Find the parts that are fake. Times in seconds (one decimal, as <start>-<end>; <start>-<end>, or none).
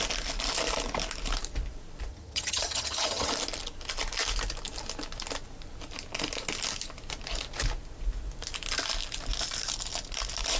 2.1-3.3